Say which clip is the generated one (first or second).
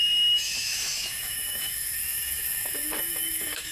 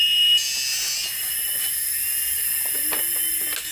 first